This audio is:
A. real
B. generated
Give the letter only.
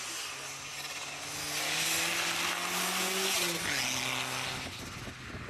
A